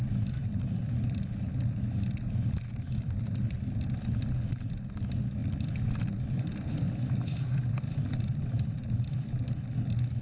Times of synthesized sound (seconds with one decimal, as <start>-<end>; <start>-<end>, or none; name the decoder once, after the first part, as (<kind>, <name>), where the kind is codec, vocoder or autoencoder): 0.4-4.6 (vocoder, BigVGAN v2); 5.4-9.5